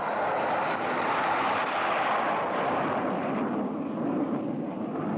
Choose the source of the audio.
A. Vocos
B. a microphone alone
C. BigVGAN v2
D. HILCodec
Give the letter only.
B